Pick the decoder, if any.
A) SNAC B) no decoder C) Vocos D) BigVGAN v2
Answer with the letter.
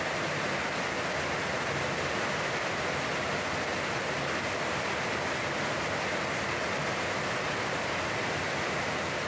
B